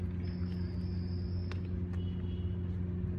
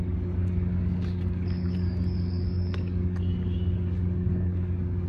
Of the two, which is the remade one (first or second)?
second